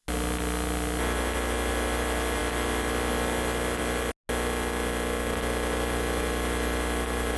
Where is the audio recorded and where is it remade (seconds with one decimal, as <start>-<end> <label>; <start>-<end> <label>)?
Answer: 0.0-7.4 recorded